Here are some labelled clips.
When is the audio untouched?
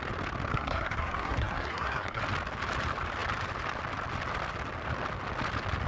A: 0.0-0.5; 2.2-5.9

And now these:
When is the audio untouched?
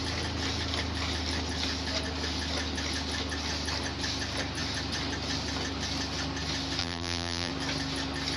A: 0.0-6.8; 7.5-8.4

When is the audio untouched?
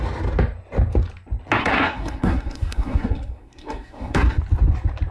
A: 0.0-1.6; 4.4-5.1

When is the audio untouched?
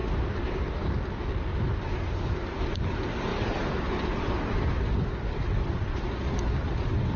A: 1.0-1.5; 2.6-3.3; 3.8-7.2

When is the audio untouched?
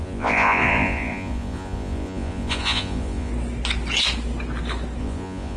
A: 3.3-5.0